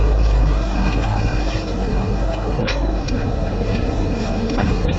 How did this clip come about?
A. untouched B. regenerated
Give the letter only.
B